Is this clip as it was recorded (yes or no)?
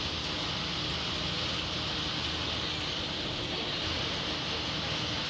yes